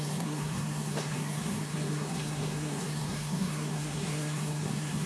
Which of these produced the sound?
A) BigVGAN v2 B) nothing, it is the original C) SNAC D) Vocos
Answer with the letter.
C